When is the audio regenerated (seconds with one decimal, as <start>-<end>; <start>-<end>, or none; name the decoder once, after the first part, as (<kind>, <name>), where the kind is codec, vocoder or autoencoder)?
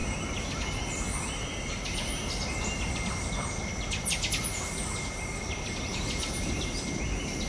none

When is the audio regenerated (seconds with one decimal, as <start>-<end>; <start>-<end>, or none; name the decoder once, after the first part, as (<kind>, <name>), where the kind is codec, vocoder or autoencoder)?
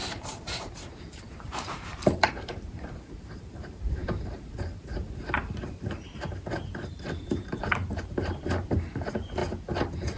0.0-9.4 (vocoder, BigVGAN v2)